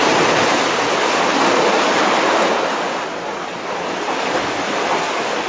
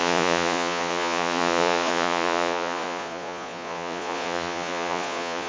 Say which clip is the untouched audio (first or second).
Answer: first